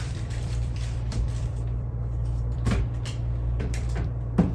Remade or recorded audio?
remade